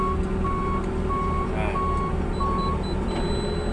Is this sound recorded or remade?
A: recorded